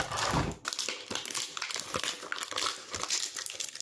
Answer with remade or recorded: recorded